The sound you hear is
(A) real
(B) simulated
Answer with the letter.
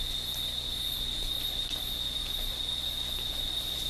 A